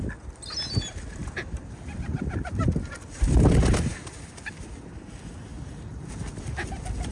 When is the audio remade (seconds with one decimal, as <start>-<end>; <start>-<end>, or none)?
1.2-1.7; 5.5-6.1